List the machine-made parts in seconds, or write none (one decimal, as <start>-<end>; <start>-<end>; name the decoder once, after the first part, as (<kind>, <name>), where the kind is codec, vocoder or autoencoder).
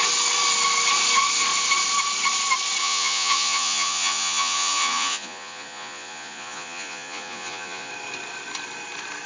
2.8-7.9 (vocoder, Vocos)